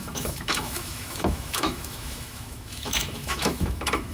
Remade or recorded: remade